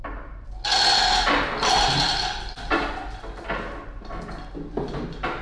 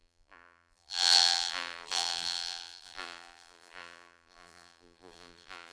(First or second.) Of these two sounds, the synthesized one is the second